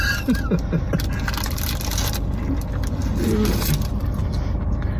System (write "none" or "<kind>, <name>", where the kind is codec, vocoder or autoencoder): none